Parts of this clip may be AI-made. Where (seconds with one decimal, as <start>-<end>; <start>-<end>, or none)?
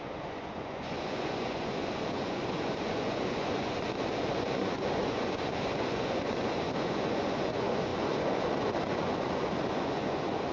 0.0-10.5